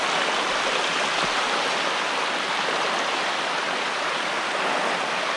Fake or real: real